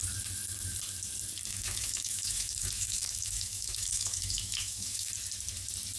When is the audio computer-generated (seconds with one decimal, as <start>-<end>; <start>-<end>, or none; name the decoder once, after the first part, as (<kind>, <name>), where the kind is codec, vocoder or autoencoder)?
1.5-5.1 (autoencoder, DAC-VAE)